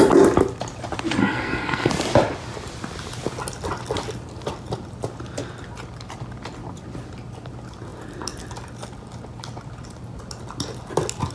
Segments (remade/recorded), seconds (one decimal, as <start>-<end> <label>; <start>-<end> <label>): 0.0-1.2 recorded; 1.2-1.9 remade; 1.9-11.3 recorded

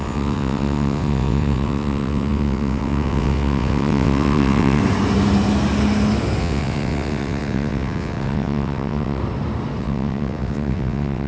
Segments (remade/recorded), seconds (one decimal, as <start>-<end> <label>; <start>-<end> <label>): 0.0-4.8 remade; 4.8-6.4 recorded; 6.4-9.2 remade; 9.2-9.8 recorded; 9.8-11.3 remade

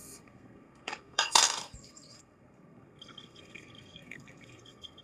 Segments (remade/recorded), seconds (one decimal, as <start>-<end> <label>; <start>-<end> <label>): 0.0-5.0 remade

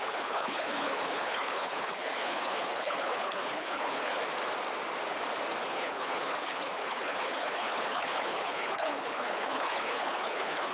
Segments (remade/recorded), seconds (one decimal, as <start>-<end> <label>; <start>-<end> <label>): 0.0-4.2 remade; 4.2-5.6 recorded; 5.6-10.7 remade

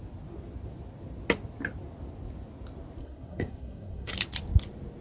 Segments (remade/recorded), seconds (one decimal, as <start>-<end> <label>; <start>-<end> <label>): 0.0-3.0 recorded; 3.0-4.1 remade; 4.1-5.0 recorded

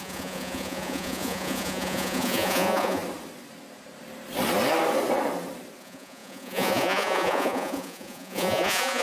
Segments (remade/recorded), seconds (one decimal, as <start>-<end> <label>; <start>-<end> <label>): 0.0-3.0 remade; 3.0-5.8 recorded; 5.8-9.0 remade

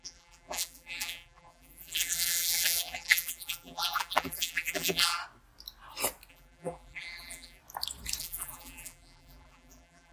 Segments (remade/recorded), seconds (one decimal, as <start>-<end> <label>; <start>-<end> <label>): 0.0-5.2 remade; 5.2-6.3 recorded; 6.3-7.6 remade; 7.6-8.2 recorded; 8.2-10.1 remade

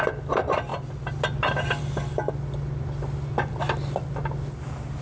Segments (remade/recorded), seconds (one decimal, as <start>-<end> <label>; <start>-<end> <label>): 0.0-5.0 recorded